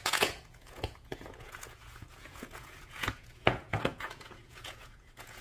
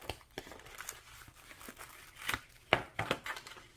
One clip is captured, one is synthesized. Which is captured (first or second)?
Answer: second